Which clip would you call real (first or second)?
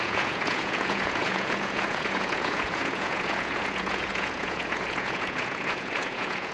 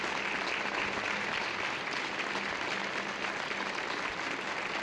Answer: second